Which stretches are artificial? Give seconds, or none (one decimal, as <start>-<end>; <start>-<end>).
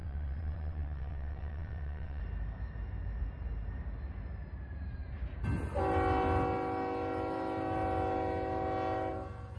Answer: 0.0-2.2